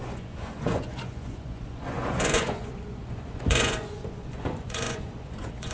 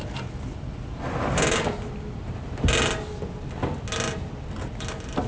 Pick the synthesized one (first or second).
first